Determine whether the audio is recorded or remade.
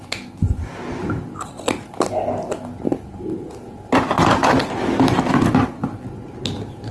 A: recorded